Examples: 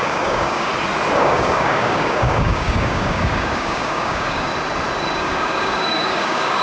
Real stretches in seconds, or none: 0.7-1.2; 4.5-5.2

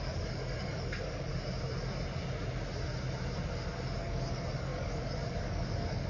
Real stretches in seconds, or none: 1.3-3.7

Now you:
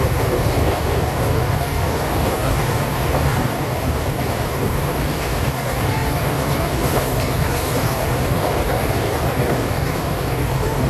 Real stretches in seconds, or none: none

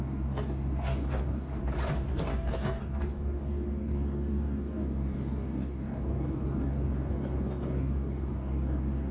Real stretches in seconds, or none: 1.6-2.1